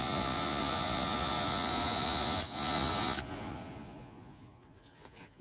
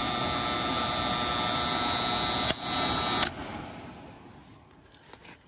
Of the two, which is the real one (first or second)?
second